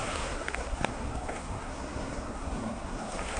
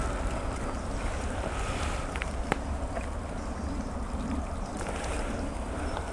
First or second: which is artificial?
first